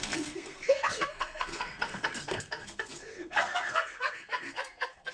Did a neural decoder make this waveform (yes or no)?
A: yes